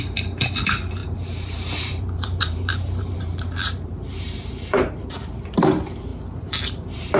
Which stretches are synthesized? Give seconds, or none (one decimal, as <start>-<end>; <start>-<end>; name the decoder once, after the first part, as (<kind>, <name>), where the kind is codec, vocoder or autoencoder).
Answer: 1.0-5.3 (vocoder, BigVGAN v2)